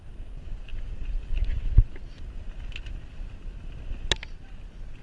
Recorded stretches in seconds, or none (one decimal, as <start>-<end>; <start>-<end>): 0.0-5.0